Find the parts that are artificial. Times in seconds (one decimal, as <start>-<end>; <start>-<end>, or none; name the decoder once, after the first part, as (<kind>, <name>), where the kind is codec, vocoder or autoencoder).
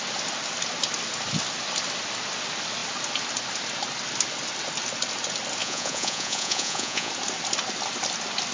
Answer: 5.6-7.1 (vocoder, Vocos)